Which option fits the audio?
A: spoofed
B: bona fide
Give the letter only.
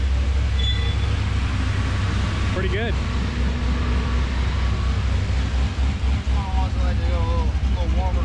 B